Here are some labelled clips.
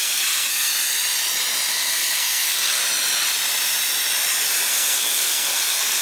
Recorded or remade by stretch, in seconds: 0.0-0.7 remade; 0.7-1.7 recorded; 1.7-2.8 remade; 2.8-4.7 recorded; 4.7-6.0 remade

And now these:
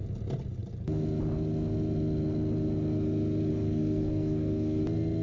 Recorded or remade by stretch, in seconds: 0.0-3.5 recorded; 3.5-4.8 remade; 4.8-5.2 recorded